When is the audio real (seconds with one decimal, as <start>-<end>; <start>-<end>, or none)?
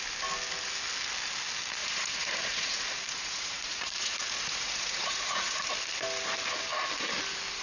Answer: 0.0-1.8; 5.7-7.6